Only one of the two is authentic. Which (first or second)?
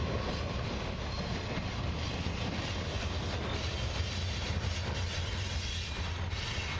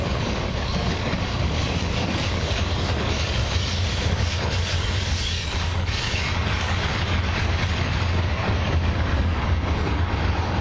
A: first